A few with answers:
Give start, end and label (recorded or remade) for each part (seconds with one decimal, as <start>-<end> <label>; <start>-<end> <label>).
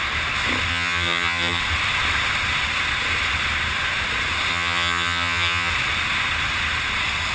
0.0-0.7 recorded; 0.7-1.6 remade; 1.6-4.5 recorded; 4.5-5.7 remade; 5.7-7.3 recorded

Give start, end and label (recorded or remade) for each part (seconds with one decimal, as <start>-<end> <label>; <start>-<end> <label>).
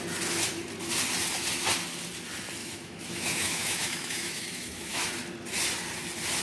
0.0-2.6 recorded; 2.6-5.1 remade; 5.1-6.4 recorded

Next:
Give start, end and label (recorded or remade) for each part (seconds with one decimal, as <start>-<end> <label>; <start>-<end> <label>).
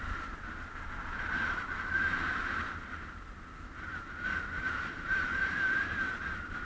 0.0-6.6 recorded